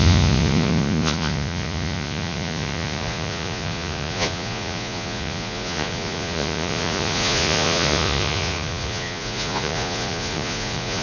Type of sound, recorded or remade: remade